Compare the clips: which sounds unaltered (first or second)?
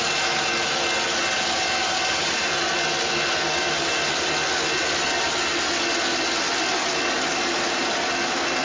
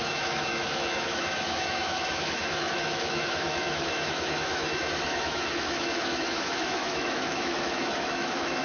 first